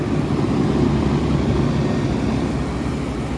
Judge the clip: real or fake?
real